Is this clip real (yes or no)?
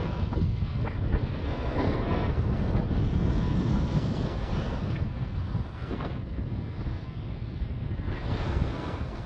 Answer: no